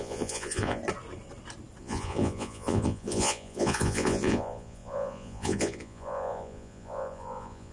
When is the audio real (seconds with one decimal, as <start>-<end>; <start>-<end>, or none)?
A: 0.8-1.8